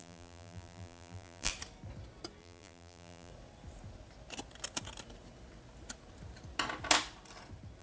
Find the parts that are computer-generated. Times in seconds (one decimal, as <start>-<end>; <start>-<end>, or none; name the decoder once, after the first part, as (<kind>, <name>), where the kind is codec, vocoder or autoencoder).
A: 0.0-1.5 (vocoder, BigVGAN v2); 2.4-3.3